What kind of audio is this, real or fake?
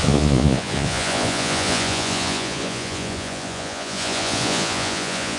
fake